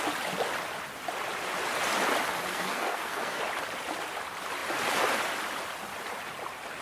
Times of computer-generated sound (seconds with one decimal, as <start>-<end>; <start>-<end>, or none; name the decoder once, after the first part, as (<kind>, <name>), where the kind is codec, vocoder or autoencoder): 2.5-3.4 (codec, SNAC)